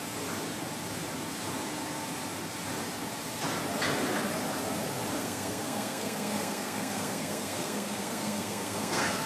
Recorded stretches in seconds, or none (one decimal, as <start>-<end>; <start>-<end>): 0.0-5.2